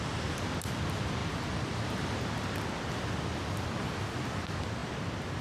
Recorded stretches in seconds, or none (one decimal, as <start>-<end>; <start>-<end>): 0.0-4.8